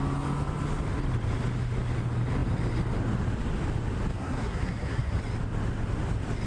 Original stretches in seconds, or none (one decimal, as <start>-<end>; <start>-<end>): 0.0-4.1; 5.2-6.5